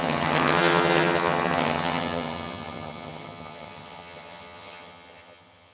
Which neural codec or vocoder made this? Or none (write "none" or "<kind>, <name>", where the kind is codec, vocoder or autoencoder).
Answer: vocoder, HiFi-GAN